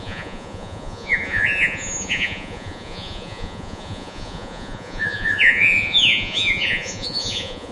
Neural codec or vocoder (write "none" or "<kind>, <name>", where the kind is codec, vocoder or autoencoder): vocoder, Vocos